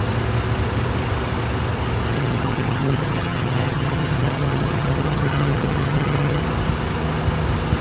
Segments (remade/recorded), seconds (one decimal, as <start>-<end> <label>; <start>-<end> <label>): 0.0-2.1 recorded; 2.1-6.4 remade; 6.4-7.8 recorded